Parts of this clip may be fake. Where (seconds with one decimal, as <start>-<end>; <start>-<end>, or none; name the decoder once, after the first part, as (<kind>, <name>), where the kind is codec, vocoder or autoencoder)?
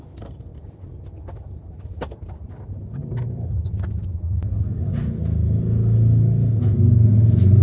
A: 0.5-4.6 (vocoder, BigVGAN v2)